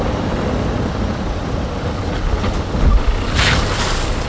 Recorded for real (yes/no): yes